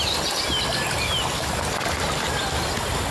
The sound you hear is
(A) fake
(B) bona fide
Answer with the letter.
B